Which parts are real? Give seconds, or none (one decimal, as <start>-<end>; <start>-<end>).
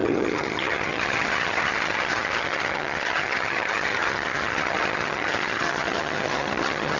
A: none